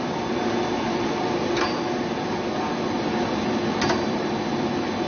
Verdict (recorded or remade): recorded